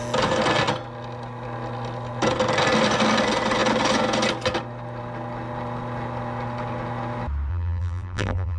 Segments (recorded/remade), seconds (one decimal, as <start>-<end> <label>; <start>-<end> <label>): 0.0-7.5 recorded; 7.5-8.6 remade